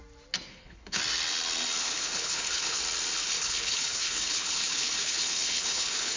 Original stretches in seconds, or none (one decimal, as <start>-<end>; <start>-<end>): 0.0-0.5; 1.0-1.8; 2.8-3.2